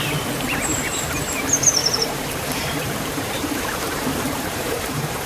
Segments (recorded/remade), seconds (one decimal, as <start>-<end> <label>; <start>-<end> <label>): 0.0-1.8 recorded; 1.8-5.3 remade